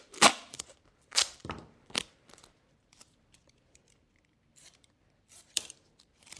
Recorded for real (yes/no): no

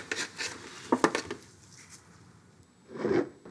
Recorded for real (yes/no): yes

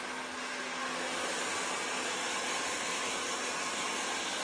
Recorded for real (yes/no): yes